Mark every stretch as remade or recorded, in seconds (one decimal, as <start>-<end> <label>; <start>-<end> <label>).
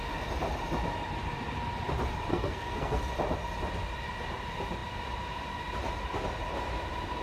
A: 0.0-2.3 recorded; 2.3-3.0 remade; 3.0-7.2 recorded